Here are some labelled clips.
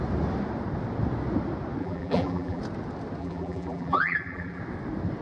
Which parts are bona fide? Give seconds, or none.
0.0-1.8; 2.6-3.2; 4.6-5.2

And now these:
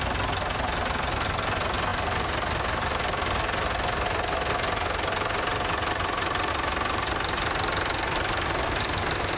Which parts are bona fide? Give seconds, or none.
0.0-9.4

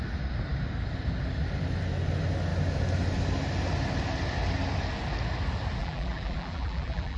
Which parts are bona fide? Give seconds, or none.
0.0-5.8

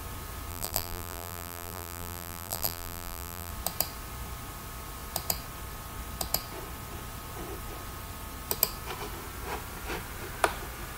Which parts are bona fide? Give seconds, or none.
0.0-0.5; 3.5-11.0

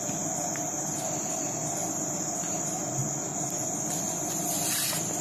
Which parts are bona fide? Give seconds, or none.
1.6-2.6; 3.0-4.1

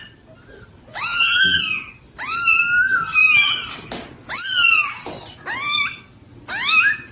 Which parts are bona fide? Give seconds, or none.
0.0-1.1; 1.6-7.1

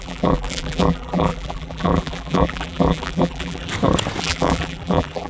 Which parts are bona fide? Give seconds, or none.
3.7-4.2